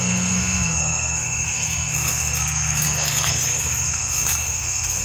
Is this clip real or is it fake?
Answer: fake